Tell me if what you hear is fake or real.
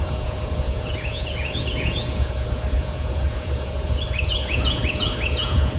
fake